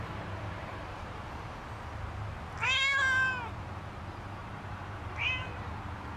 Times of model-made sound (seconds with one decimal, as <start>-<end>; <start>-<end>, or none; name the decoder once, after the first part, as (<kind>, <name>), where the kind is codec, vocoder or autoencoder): 0.0-1.6 (vocoder, BigVGAN v2); 3.6-6.2